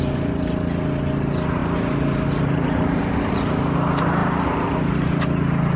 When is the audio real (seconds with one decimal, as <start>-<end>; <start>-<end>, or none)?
0.0-5.8